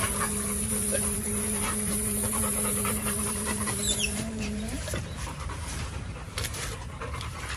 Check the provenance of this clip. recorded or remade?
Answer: remade